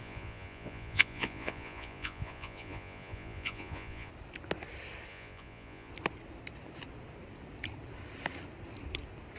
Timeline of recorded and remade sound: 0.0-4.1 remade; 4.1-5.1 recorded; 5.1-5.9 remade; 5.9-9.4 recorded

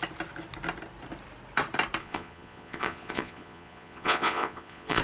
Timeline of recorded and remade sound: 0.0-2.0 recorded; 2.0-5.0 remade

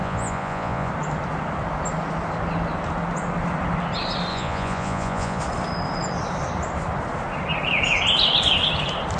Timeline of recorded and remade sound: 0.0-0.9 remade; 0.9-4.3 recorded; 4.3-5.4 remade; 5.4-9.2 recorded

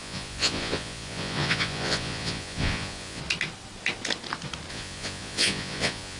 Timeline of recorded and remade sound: 0.0-3.2 remade; 3.2-4.7 recorded; 4.7-6.2 remade

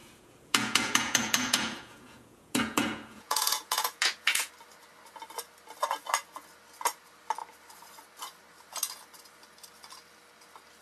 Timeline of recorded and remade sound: 0.0-4.5 remade; 4.5-10.8 recorded

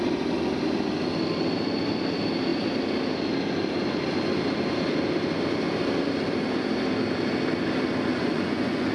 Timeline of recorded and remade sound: 0.0-8.1 recorded; 8.1-8.9 remade

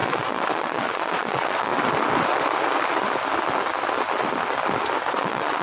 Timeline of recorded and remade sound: 0.0-1.7 remade; 1.7-5.1 recorded; 5.1-5.6 remade

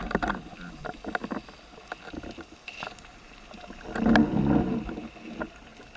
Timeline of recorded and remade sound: 0.0-6.0 recorded